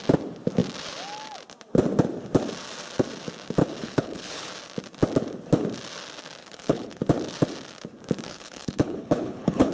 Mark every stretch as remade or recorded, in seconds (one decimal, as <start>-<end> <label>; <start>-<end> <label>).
0.0-3.8 recorded; 3.8-4.5 remade; 4.5-6.4 recorded; 6.4-7.0 remade; 7.0-8.3 recorded; 8.3-9.7 remade